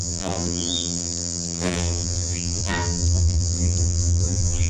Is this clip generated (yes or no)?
yes